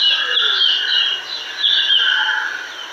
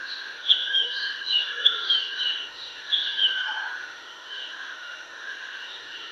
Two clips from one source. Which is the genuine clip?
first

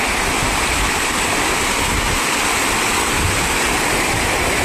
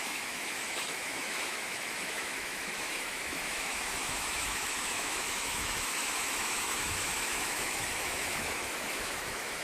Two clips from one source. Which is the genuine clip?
first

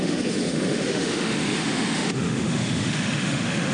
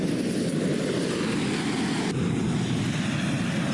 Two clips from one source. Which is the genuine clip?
second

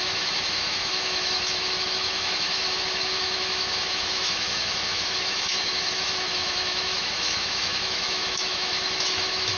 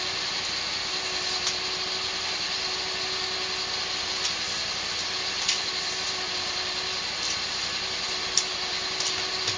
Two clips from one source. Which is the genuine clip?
second